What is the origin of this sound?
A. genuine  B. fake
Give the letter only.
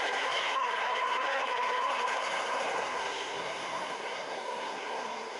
B